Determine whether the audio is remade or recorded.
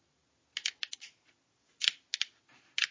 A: recorded